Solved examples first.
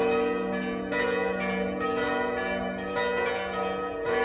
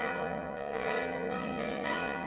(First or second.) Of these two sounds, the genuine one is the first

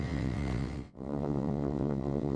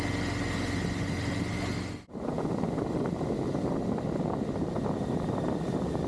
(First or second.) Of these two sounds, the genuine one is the second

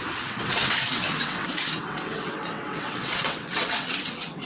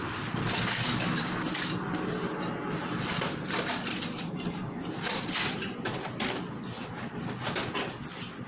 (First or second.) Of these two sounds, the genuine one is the second